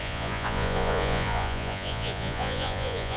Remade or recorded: remade